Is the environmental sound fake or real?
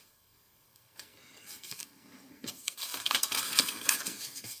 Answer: fake